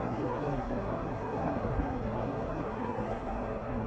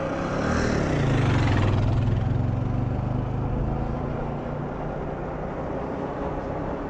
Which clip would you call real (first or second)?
second